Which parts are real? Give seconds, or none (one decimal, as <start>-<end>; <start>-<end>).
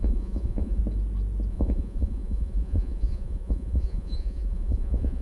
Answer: 0.8-1.5